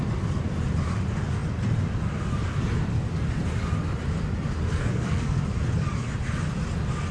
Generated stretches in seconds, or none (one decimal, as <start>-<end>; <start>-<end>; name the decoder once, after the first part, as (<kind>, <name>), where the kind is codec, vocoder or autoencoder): 4.8-5.4 (codec, SNAC)